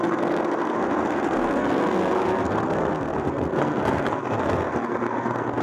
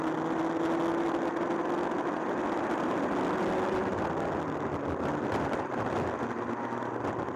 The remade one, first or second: first